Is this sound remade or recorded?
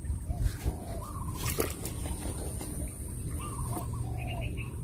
recorded